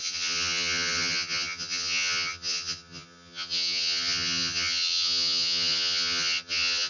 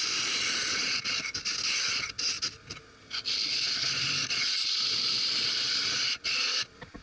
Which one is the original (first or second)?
second